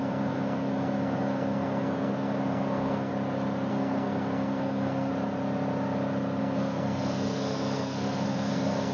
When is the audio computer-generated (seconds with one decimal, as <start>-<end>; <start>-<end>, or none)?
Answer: 0.0-3.1; 3.7-5.1; 6.4-8.9